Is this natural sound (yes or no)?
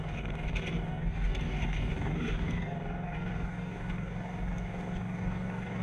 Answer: no